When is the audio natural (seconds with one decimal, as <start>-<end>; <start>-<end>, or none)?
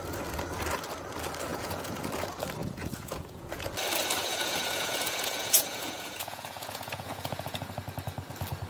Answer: 0.0-1.5; 2.0-2.6; 3.7-4.2; 7.7-8.7